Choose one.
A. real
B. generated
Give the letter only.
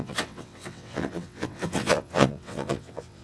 B